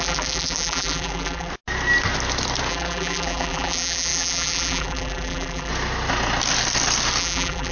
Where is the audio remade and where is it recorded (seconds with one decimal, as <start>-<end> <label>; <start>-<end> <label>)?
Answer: 0.0-1.5 remade; 1.5-2.7 recorded; 2.7-5.7 remade; 5.7-7.2 recorded; 7.2-7.7 remade